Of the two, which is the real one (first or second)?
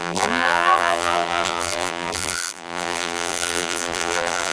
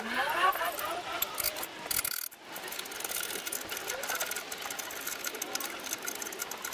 second